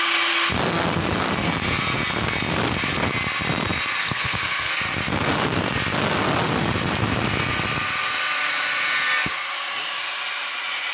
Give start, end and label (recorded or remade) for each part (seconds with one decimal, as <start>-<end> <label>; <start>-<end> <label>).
0.0-4.0 recorded; 4.0-4.7 remade; 4.7-10.9 recorded